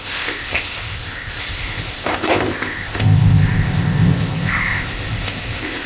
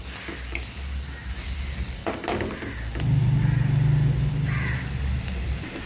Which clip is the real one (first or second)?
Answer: second